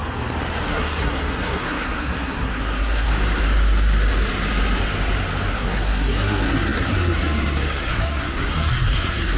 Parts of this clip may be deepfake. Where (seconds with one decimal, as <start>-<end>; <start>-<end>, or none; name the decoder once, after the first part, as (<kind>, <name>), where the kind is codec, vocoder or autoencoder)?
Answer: 0.7-3.1 (codec, SNAC); 5.5-9.4